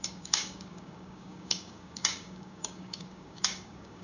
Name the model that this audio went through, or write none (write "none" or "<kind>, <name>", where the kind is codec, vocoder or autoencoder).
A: codec, DAC